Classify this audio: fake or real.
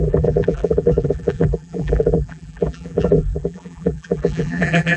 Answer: fake